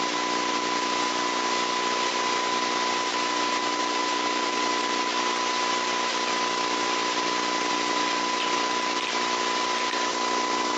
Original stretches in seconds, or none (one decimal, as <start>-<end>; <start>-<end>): 0.0-10.8